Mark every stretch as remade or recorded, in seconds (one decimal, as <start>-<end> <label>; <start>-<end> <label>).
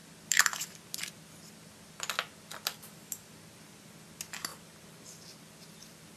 0.0-3.7 remade; 3.7-6.2 recorded